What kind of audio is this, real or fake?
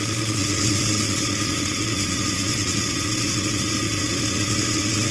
fake